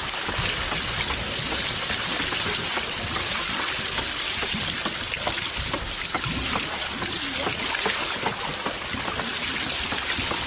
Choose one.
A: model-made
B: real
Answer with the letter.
B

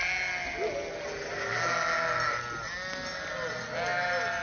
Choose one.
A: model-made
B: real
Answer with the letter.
B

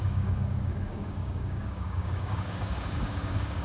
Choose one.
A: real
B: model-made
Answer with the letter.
B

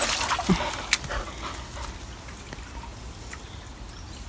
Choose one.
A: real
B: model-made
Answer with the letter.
A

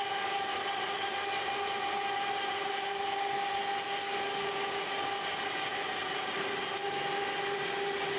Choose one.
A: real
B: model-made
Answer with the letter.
A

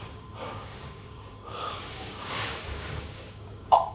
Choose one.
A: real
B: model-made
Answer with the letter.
B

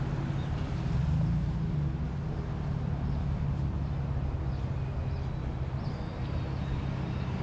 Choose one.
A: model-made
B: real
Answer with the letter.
B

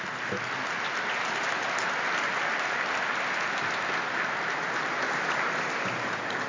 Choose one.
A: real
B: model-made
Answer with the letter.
A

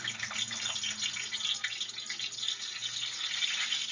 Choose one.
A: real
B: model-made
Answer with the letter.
A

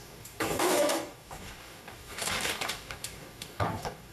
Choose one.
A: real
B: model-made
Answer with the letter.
B